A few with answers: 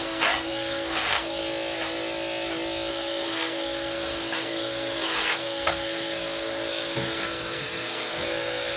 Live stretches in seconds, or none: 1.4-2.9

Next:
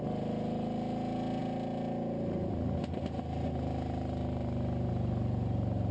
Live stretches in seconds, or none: 0.0-5.9

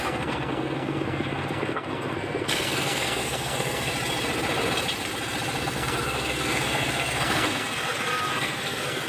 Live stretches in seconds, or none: 3.9-5.6

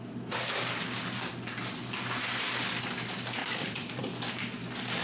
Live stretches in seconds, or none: 0.0-3.4; 4.0-5.0

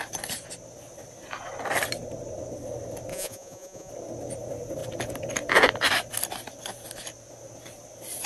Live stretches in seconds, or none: 0.0-3.1; 3.9-8.3

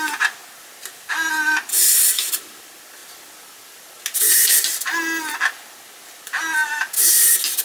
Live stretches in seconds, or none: 0.0-7.6

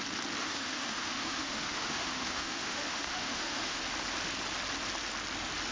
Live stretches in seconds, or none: 0.0-0.4; 3.8-5.7